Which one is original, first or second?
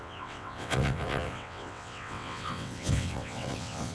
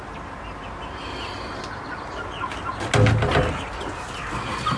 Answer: second